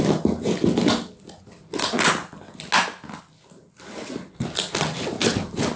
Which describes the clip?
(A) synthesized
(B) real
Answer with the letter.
B